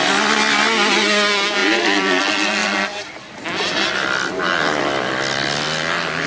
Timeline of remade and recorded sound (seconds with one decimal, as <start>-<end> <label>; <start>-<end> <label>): 0.0-6.3 recorded